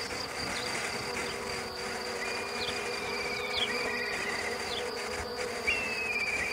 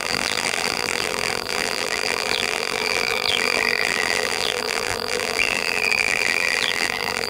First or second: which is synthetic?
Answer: second